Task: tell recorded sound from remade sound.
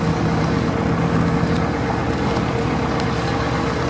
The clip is recorded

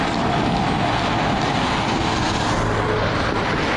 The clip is recorded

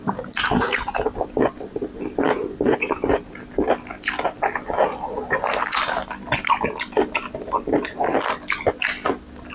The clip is recorded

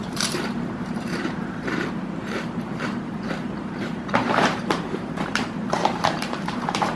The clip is remade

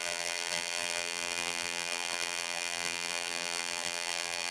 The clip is remade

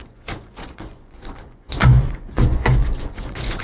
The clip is remade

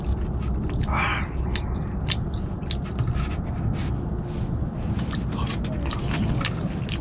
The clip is recorded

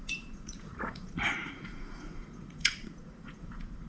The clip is remade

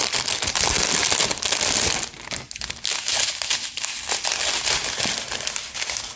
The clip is recorded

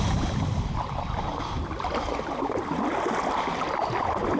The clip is recorded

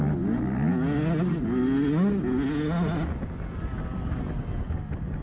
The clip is recorded